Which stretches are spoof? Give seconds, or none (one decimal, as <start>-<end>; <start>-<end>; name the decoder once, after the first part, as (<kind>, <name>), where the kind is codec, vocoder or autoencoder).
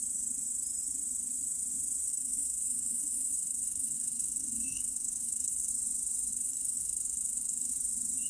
2.1-5.7 (codec, SNAC); 6.3-7.7